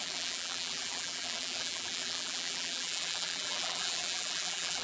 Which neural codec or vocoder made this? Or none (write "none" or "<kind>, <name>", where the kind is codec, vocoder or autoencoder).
vocoder, BigVGAN v2